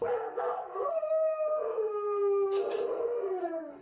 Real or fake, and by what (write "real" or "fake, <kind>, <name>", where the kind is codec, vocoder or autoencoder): fake, codec, SNAC